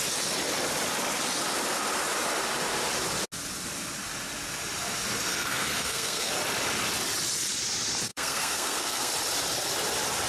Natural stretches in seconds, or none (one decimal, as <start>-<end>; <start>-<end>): 0.0-5.3; 6.3-8.1; 9.1-10.3